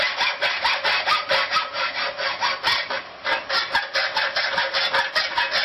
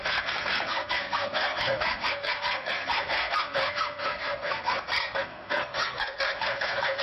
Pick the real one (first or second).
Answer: first